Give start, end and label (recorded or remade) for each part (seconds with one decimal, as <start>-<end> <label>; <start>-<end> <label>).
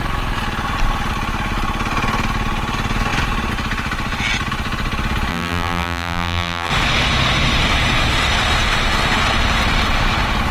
0.0-5.3 recorded; 5.3-6.7 remade; 6.7-10.5 recorded